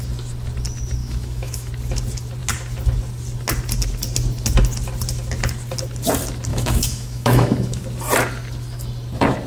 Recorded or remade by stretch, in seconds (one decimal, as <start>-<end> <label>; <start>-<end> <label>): 0.0-1.0 recorded; 1.0-1.7 remade; 1.7-6.5 recorded; 6.5-7.8 remade; 7.8-9.5 recorded